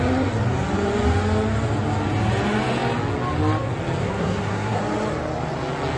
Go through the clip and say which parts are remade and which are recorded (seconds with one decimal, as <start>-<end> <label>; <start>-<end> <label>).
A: 0.0-4.0 recorded; 4.0-4.8 remade; 4.8-6.0 recorded